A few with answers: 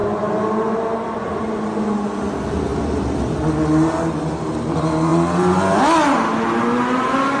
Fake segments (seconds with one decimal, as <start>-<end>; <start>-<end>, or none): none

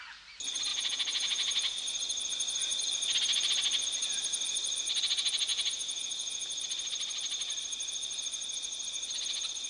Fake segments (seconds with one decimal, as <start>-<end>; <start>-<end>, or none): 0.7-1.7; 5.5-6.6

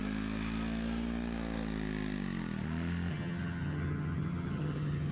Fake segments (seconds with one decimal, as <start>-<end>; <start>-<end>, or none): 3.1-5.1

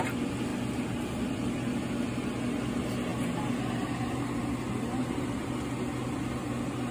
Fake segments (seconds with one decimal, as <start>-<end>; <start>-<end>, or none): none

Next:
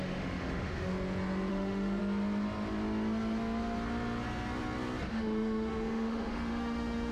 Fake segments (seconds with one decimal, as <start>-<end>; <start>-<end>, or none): 0.0-0.9; 1.5-2.0; 5.1-7.1

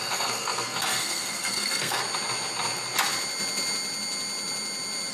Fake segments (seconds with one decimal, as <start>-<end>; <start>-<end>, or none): 0.0-2.0

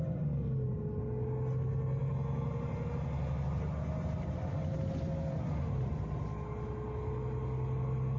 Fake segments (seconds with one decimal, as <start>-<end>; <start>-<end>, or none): none